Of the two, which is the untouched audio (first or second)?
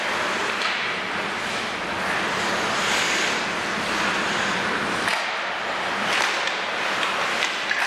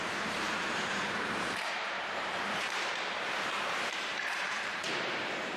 first